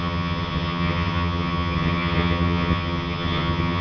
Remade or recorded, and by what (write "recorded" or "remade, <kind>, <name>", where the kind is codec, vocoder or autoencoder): remade, vocoder, HiFi-GAN